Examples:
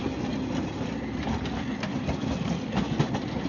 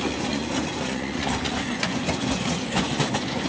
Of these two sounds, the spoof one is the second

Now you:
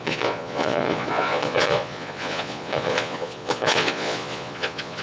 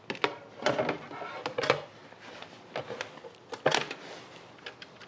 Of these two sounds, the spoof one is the first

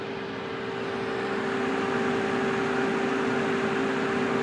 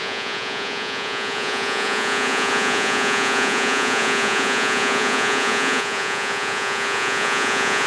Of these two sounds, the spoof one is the second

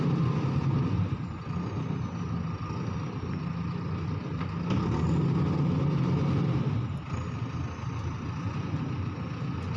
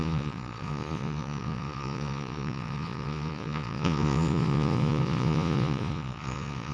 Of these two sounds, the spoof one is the second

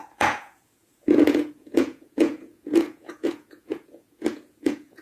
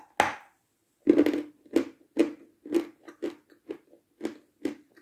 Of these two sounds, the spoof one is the first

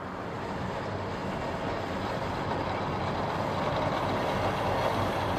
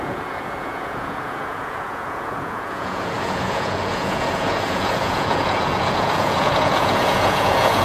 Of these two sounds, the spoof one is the second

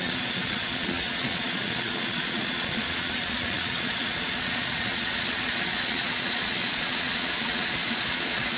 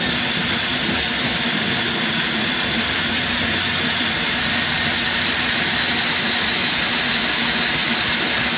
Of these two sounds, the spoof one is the first